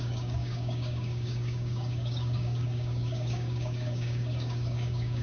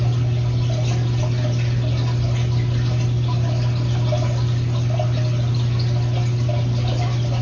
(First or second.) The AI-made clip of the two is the first